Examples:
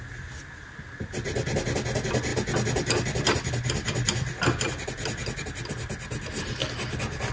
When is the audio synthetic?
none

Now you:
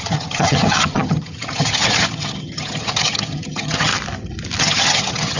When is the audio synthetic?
0.0-3.9 (vocoder, HiFi-GAN); 4.6-5.4

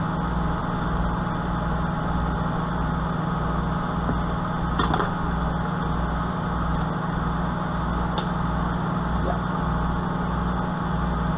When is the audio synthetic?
none

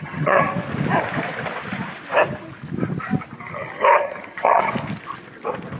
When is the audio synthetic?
0.0-0.5 (vocoder, HiFi-GAN); 4.0-4.7

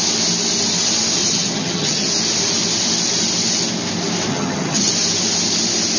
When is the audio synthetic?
1.2-2.1 (vocoder, HiFi-GAN); 4.3-4.9

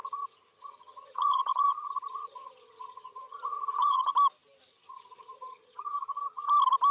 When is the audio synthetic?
0.0-4.1 (vocoder, HiFi-GAN); 4.7-6.5